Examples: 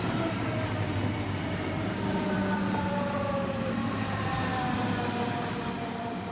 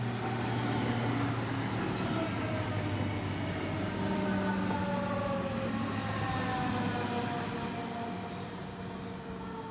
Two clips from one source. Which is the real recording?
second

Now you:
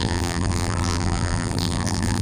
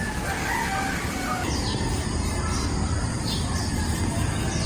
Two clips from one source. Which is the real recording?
second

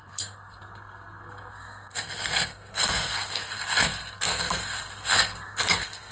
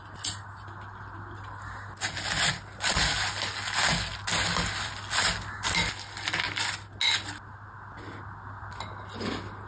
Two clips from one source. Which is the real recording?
second